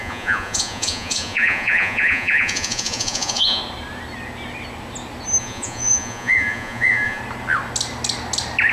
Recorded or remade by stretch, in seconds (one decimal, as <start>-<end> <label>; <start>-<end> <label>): 0.0-3.6 remade; 3.6-5.4 recorded; 5.4-7.2 remade; 7.2-8.7 recorded